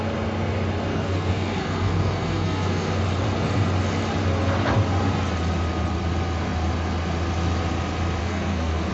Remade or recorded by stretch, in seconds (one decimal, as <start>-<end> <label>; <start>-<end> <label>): 0.0-0.9 recorded; 0.9-3.0 remade; 3.0-8.2 recorded; 8.2-8.9 remade